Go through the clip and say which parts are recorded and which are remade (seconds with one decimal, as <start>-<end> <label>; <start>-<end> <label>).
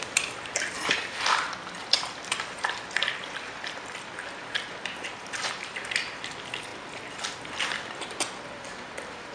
0.0-1.8 recorded; 1.8-4.1 remade; 4.1-9.3 recorded